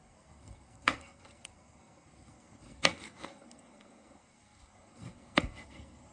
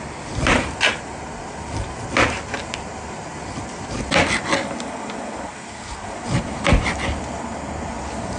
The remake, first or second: first